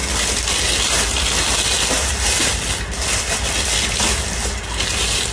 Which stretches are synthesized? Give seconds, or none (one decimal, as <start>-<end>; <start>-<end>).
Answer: none